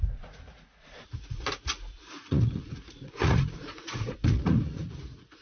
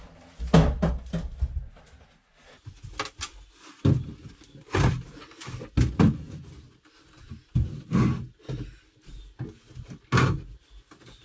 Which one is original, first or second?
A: second